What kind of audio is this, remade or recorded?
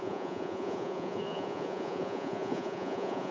remade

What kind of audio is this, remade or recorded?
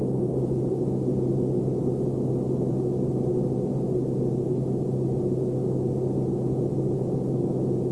recorded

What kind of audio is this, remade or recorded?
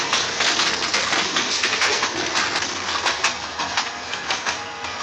remade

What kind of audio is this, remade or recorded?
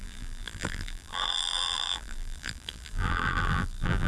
remade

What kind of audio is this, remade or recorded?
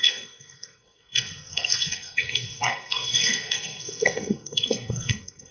remade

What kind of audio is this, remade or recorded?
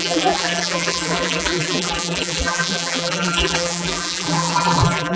remade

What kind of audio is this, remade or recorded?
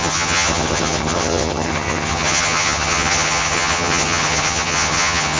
remade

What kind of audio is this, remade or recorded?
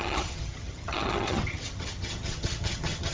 remade